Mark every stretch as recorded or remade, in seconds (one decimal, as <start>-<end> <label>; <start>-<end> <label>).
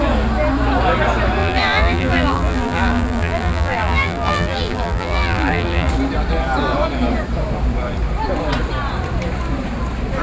0.0-1.4 recorded; 1.4-5.9 remade; 5.9-10.2 recorded